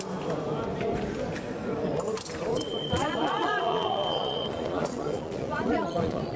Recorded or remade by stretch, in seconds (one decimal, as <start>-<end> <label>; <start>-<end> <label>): 0.0-2.5 recorded; 2.5-6.4 remade